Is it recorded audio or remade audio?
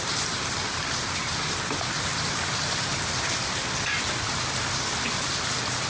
recorded